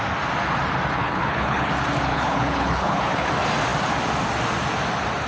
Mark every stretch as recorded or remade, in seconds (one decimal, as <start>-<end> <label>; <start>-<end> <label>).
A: 0.0-1.0 recorded; 1.0-1.7 remade; 1.7-2.1 recorded; 2.1-3.3 remade; 3.3-5.3 recorded